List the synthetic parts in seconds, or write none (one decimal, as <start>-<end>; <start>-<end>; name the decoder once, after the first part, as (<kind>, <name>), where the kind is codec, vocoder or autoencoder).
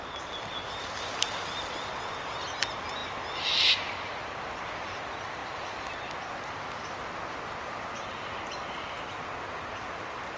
none